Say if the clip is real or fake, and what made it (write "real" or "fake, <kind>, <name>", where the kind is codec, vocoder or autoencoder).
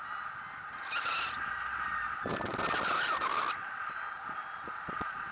real